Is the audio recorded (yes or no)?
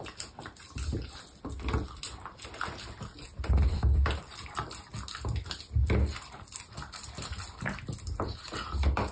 yes